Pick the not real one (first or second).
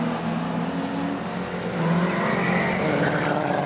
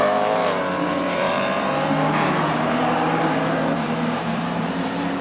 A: second